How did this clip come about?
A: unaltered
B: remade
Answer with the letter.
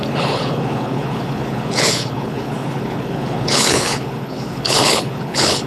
B